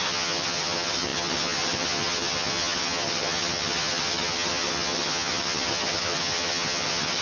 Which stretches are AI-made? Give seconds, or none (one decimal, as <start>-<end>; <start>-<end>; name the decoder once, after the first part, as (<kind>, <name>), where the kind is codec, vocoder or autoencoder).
0.0-7.2 (vocoder, HiFi-GAN)